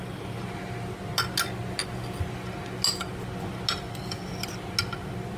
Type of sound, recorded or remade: recorded